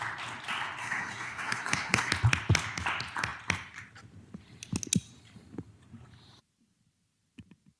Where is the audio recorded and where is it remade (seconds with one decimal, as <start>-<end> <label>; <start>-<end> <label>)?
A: 0.0-0.8 recorded; 0.8-2.1 remade; 2.1-7.8 recorded